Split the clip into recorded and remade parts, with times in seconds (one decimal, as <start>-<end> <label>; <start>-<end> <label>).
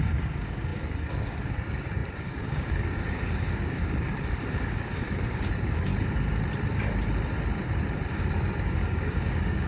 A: 0.0-5.9 remade; 5.9-8.1 recorded; 8.1-9.7 remade